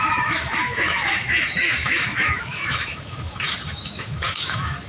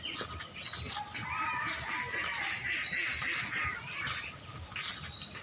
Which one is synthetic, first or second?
first